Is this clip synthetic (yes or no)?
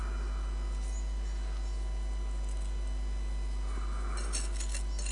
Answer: no